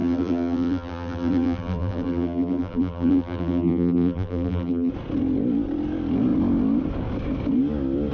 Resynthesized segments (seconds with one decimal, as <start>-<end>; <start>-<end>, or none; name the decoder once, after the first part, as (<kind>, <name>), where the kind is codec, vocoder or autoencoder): 0.0-4.9 (vocoder, BigVGAN v2)